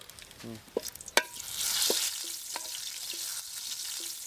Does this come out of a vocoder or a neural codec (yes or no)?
no